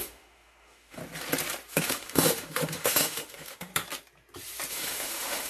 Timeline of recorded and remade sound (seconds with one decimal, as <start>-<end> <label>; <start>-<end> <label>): 0.0-1.0 remade; 1.0-1.7 recorded; 1.7-3.7 remade; 3.7-4.7 recorded; 4.7-5.5 remade